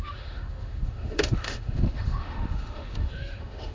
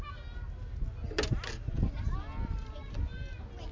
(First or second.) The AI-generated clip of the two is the first